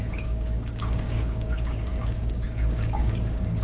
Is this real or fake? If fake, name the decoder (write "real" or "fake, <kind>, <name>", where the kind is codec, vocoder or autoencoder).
fake, codec, DAC